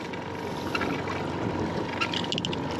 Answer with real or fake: real